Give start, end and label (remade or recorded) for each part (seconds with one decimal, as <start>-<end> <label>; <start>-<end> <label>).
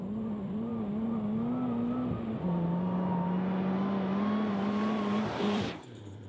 0.0-0.7 remade; 0.7-4.5 recorded; 4.5-6.3 remade